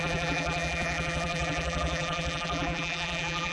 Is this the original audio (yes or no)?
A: no